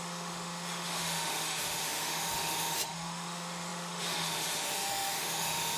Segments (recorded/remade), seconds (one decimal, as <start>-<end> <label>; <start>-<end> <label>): 0.0-5.8 remade

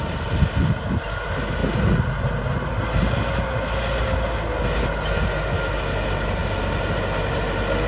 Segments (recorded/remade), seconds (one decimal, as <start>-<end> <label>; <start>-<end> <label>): 0.0-7.9 recorded

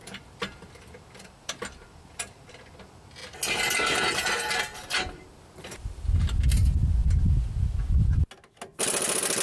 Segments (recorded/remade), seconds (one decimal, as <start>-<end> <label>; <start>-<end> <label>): 0.0-9.4 recorded

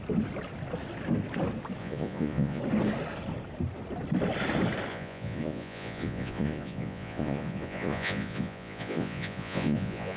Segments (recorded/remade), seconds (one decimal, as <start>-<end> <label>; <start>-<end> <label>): 0.0-1.8 recorded; 1.8-2.6 remade; 2.6-4.9 recorded; 4.9-10.2 remade

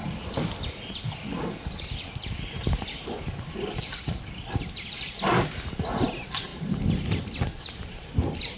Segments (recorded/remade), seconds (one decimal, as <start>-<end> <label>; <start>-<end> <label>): 0.0-8.6 recorded

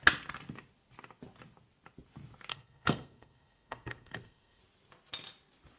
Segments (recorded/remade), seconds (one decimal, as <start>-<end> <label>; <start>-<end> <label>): 0.0-2.5 recorded; 2.5-4.6 remade; 4.6-5.8 recorded